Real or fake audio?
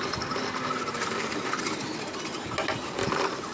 real